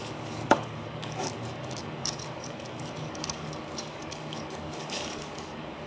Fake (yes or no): yes